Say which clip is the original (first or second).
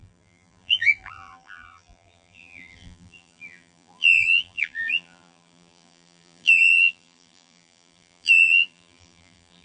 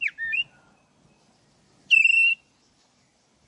second